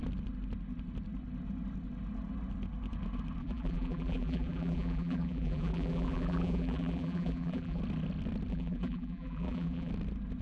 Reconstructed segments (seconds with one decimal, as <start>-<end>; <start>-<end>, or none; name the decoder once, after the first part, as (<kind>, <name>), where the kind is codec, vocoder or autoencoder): 3.4-7.8 (vocoder, BigVGAN v2); 8.5-9.9